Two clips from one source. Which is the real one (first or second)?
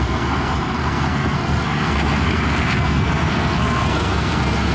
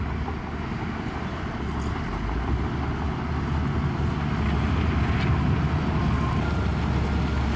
second